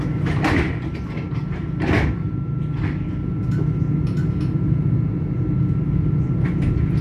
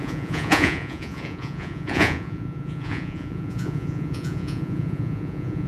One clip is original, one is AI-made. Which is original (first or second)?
first